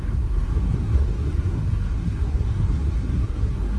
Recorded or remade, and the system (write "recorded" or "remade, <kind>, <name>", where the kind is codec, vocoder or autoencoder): remade, codec, SNAC